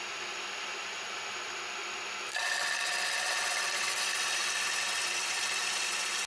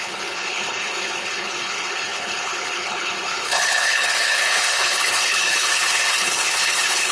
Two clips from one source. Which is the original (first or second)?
first